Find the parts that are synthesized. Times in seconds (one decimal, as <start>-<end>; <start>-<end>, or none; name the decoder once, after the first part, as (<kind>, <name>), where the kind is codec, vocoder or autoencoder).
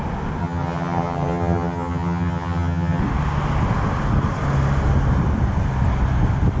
0.4-3.0 (vocoder, HiFi-GAN)